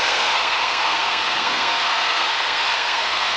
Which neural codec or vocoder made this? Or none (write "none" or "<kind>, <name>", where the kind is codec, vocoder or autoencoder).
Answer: codec, SNAC